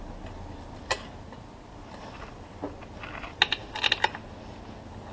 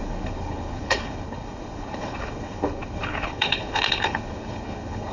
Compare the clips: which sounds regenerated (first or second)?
second